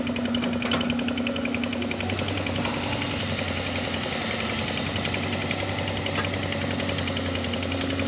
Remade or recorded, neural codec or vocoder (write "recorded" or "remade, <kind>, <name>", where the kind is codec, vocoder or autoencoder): recorded